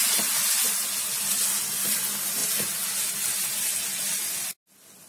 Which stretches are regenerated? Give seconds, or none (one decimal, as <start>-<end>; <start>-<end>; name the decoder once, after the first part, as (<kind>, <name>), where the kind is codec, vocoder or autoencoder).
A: none